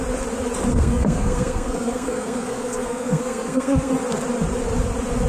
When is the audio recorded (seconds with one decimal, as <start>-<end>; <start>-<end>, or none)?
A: 0.0-0.7; 3.9-5.3